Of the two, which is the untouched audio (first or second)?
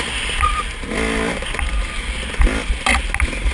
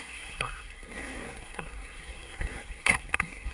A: first